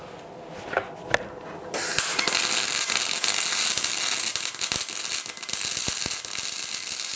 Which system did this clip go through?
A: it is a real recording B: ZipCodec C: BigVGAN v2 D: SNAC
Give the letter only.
A